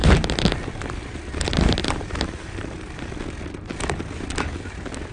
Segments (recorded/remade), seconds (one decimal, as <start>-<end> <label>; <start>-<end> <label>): 0.0-3.1 remade; 3.1-5.1 recorded